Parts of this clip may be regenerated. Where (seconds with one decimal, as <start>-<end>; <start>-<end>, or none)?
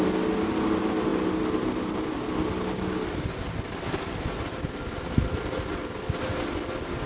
none